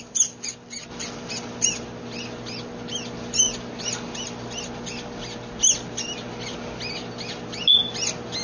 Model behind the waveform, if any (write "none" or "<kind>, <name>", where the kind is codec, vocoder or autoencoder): none